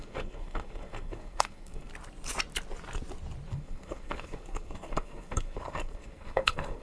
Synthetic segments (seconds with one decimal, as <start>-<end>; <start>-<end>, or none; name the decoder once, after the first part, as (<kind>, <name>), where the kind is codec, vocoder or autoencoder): 0.0-1.9 (codec, SNAC); 3.5-6.8